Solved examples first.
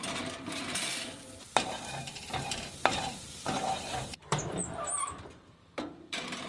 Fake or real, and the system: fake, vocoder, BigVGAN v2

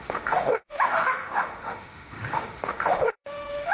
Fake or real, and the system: fake, autoencoder, DAC-VAE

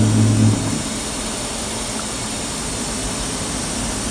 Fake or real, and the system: real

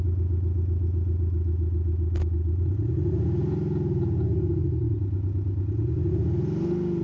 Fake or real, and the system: real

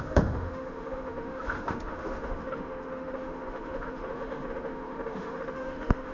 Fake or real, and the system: fake, autoencoder, DAC-VAE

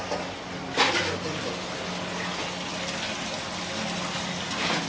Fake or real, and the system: real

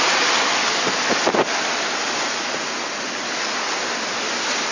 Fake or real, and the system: real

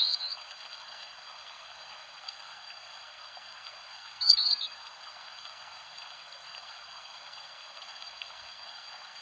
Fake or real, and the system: fake, codec, SNAC